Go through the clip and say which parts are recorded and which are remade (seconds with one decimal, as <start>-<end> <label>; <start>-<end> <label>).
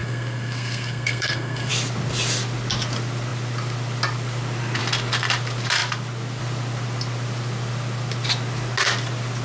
0.0-1.7 remade; 1.7-9.4 recorded